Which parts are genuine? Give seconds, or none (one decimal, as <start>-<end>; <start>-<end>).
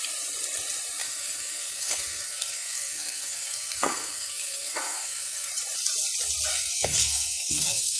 0.0-1.0; 5.5-6.5